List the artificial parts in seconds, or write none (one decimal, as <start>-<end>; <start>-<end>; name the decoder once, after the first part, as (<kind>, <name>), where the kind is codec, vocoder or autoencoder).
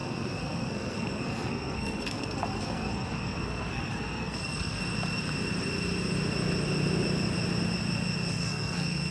0.0-4.8 (codec, SNAC); 8.3-9.1